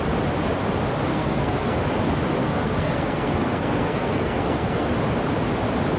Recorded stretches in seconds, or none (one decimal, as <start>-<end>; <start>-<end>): 0.0-1.1; 1.8-2.4; 4.9-6.0